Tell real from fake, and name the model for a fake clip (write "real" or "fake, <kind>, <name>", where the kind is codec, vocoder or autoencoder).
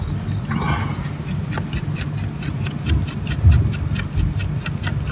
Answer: real